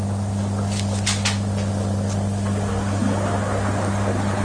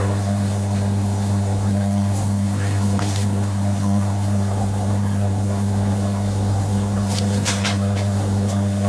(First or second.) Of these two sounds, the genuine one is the first